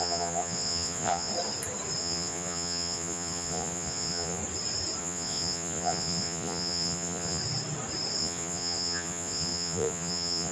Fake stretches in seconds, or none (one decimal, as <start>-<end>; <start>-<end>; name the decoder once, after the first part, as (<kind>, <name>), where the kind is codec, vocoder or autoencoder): 0.0-1.3 (vocoder, Vocos); 2.0-4.4; 5.0-7.4; 8.2-10.5